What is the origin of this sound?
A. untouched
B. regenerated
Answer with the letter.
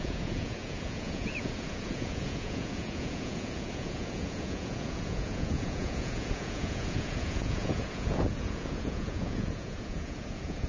B